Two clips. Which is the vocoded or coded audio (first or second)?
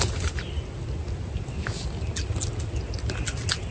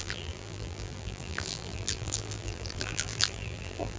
second